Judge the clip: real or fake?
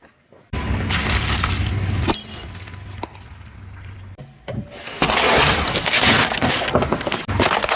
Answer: real